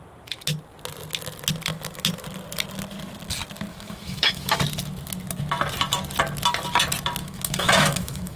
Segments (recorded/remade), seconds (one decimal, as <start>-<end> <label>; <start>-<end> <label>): 0.0-3.7 recorded; 3.7-4.6 remade; 4.6-7.2 recorded; 7.2-8.4 remade